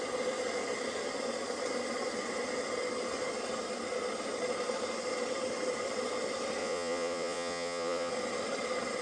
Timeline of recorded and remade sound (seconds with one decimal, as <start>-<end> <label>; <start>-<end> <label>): 0.0-6.6 recorded; 6.6-8.1 remade; 8.1-9.0 recorded